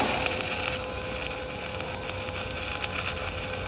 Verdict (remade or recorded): recorded